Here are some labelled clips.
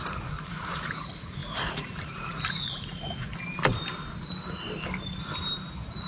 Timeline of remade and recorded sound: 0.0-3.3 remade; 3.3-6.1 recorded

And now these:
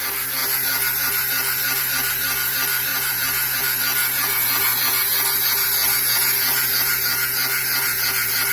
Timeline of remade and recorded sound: 0.0-2.9 recorded; 2.9-3.6 remade; 3.6-4.0 recorded; 4.0-8.5 remade

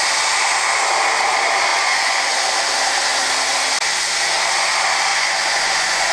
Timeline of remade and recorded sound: 0.0-1.7 recorded; 1.7-2.3 remade; 2.3-5.1 recorded; 5.1-6.1 remade

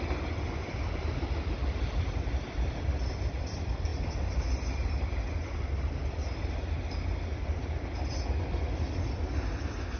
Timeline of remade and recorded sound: 0.0-10.0 recorded

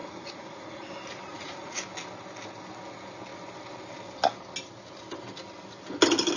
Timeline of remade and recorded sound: 0.0-0.9 remade; 0.9-1.3 recorded; 1.3-1.8 remade; 1.8-6.4 recorded

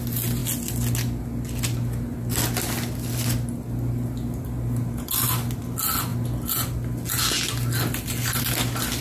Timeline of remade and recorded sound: 0.0-9.0 recorded

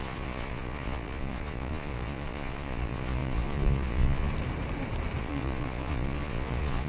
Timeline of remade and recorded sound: 0.0-4.3 remade; 4.3-5.2 recorded; 5.2-6.9 remade

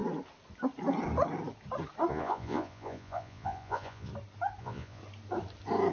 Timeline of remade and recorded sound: 0.0-2.1 recorded; 2.1-4.1 remade; 4.1-4.6 recorded; 4.6-5.0 remade; 5.0-5.9 recorded